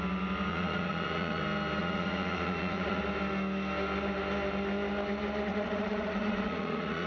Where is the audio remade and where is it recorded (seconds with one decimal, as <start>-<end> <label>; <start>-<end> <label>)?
0.0-0.5 recorded; 0.5-1.4 remade; 1.4-1.8 recorded; 1.8-3.0 remade; 3.0-5.5 recorded; 5.5-7.1 remade